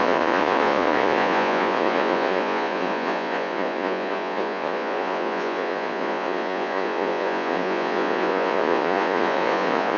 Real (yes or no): no